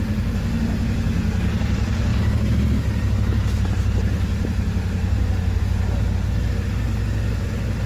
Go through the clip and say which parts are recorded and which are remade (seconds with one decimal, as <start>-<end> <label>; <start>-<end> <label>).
0.0-2.1 recorded; 2.1-5.6 remade; 5.6-7.9 recorded